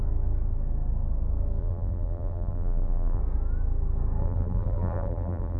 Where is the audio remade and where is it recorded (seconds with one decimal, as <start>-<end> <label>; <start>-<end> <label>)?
0.0-1.6 recorded; 1.6-3.2 remade; 3.2-4.2 recorded; 4.2-5.6 remade

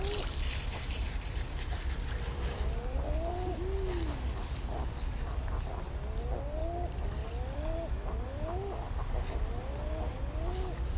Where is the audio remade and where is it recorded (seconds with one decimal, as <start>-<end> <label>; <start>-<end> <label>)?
0.0-11.0 recorded

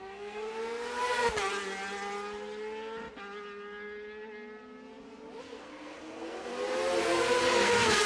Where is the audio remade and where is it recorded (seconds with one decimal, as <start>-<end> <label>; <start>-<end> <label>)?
0.0-0.5 remade; 0.5-5.4 recorded; 5.4-6.5 remade; 6.5-7.4 recorded; 7.4-8.1 remade